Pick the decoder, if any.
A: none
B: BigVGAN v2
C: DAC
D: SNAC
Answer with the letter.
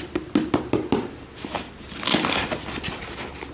A